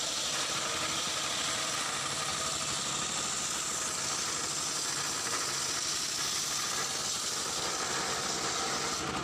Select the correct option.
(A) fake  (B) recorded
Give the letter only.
B